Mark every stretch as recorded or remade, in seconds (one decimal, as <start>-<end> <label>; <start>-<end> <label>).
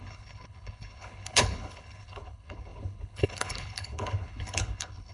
0.0-5.1 remade